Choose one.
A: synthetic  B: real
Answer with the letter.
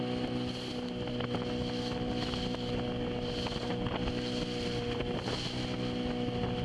B